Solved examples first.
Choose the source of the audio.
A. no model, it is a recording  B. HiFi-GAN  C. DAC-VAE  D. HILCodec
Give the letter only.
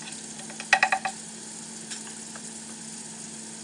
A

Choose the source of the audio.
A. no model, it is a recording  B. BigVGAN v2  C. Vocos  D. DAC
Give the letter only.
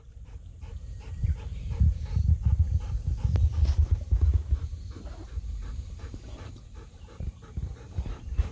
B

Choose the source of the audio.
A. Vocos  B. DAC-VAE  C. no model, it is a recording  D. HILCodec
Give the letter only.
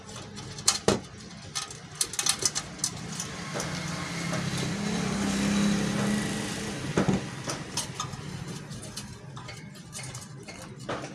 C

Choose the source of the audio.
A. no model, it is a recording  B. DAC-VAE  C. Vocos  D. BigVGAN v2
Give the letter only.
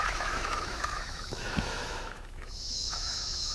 B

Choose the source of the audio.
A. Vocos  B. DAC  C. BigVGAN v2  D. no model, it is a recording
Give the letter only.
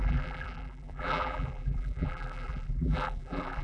C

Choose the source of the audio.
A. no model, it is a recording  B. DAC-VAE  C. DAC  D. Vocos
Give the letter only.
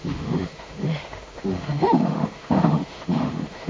B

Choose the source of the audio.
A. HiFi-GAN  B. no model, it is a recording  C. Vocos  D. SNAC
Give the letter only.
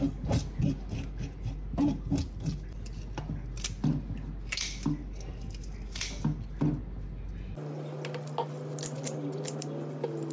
B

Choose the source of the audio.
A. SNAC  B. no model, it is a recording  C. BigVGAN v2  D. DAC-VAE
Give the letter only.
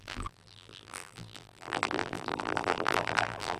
C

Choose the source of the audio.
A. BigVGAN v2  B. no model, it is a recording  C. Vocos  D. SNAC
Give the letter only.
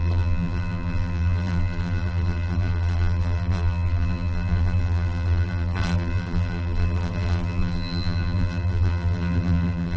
A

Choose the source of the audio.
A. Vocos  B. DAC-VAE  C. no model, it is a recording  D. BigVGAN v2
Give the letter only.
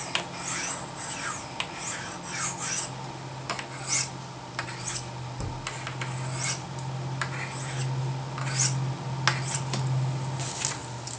C